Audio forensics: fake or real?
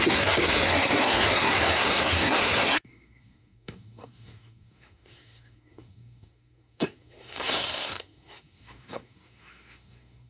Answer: fake